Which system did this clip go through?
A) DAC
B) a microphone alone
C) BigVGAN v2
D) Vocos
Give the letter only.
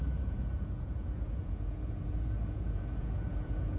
D